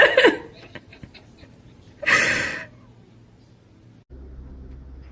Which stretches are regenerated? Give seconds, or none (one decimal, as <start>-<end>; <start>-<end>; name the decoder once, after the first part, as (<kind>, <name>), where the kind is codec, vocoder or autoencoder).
0.9-2.1 (vocoder, BigVGAN v2)